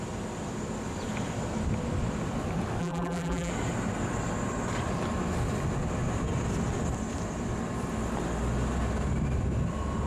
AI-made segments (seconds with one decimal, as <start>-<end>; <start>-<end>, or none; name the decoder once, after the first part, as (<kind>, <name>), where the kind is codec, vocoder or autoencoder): 2.8-3.5 (vocoder, BigVGAN v2)